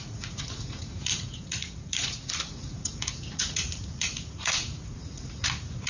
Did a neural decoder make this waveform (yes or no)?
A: yes